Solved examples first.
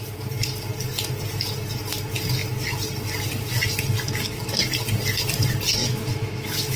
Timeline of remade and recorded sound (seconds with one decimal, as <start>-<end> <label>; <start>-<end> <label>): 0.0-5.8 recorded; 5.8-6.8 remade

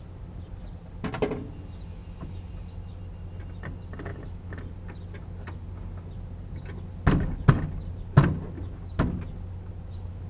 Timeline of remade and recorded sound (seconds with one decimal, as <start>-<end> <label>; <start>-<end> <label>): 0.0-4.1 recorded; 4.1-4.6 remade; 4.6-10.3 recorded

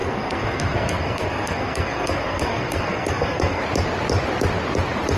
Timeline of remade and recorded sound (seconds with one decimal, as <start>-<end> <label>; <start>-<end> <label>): 0.0-3.6 remade; 3.6-5.2 recorded

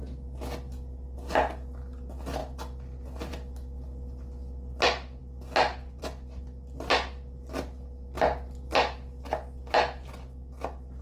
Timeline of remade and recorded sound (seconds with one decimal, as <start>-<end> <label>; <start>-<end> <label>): 0.0-11.0 recorded

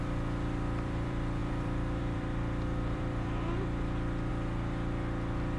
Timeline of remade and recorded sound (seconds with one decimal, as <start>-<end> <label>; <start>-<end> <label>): 0.0-4.3 remade; 4.3-5.6 recorded